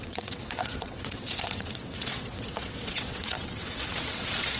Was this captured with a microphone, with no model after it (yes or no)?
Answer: no